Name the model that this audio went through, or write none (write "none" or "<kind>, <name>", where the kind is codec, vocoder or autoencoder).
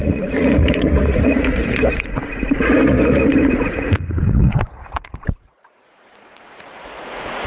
vocoder, Vocos